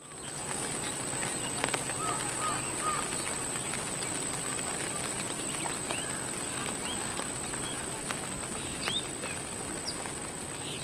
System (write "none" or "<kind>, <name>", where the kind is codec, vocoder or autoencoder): none